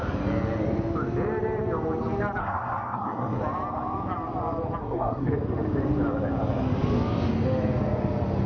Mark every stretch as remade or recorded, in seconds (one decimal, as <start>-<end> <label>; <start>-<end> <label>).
0.0-2.4 recorded; 2.4-3.4 remade; 3.4-4.8 recorded; 4.8-5.3 remade; 5.3-8.5 recorded